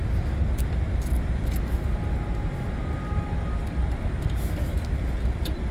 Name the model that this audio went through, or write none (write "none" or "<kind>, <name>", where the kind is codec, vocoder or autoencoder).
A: none